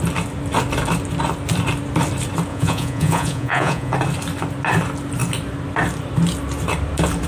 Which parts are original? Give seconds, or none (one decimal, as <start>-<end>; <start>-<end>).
0.0-2.5; 3.9-7.3